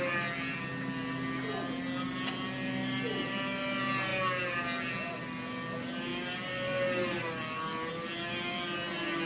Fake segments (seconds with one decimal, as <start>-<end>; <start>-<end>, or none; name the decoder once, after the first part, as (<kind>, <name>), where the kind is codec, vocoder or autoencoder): none